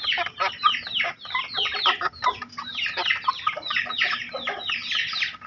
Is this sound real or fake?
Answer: real